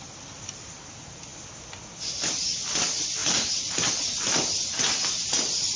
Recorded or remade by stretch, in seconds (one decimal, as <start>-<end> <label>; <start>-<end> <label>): 0.0-5.8 recorded